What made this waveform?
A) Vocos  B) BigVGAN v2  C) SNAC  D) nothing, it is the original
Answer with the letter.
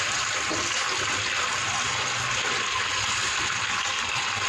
D